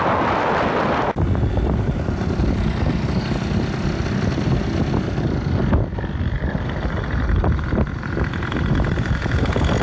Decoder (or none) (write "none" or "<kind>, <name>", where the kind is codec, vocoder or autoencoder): none